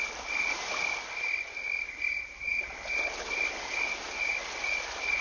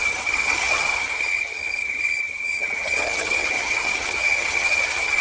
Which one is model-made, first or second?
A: second